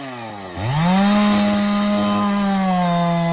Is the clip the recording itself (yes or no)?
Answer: yes